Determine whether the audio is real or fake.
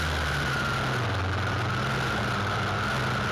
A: real